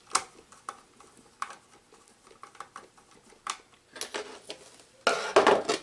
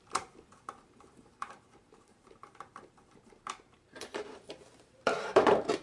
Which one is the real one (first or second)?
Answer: first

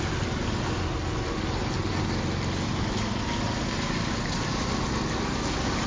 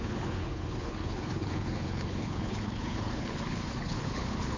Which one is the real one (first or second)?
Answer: first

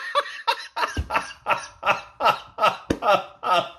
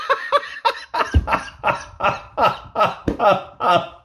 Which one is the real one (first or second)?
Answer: first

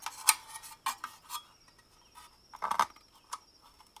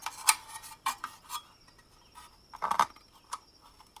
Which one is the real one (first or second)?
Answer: first